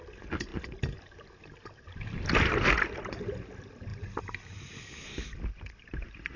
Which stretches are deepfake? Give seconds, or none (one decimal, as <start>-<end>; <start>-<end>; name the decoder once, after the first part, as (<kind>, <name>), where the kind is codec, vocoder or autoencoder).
none